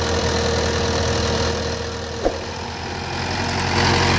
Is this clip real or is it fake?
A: real